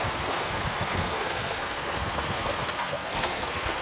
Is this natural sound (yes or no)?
no